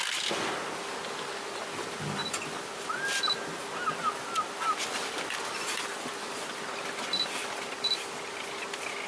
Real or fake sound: real